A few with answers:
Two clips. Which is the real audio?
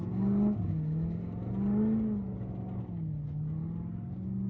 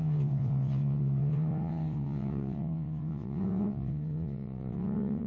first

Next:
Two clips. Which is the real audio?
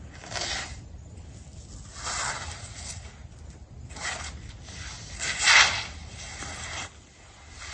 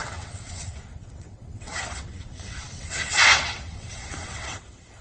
first